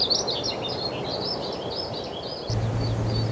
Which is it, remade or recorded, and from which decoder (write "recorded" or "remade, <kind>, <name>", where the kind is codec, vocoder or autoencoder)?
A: recorded